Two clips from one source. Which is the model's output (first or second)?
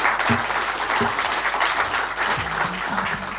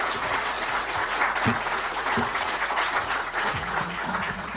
second